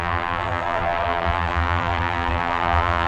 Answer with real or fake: fake